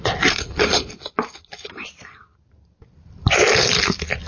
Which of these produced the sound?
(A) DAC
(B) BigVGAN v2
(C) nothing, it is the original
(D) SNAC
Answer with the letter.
C